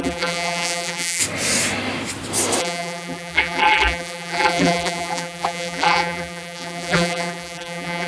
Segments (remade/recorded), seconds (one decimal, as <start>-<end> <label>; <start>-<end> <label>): 0.0-1.2 remade; 1.2-2.6 recorded; 2.6-8.1 remade